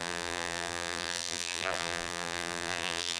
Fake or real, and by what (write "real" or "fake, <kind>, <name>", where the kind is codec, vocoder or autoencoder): fake, vocoder, BigVGAN v2